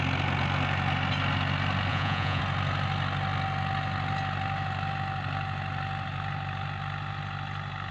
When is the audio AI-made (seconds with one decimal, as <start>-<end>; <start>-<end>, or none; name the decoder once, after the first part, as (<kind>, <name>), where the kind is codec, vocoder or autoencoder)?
1.9-2.4 (vocoder, Vocos)